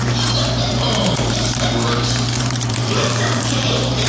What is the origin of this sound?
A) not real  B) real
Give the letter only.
A